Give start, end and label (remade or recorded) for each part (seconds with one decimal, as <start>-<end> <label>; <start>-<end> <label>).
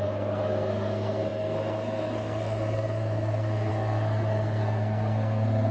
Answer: 0.0-5.7 remade